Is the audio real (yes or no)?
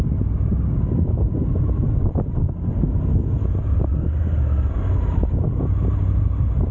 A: yes